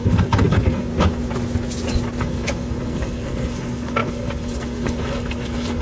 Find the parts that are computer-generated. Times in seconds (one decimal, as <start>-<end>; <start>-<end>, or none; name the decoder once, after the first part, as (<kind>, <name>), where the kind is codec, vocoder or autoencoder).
0.0-0.9 (codec, SNAC); 2.2-5.8